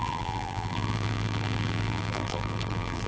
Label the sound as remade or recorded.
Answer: remade